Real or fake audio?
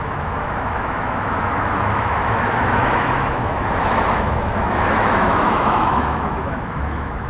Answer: fake